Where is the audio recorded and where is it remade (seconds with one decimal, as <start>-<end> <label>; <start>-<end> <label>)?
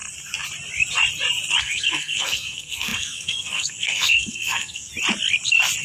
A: 0.0-1.6 recorded; 1.6-4.9 remade; 4.9-5.8 recorded